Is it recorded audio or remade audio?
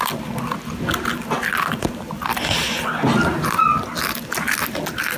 recorded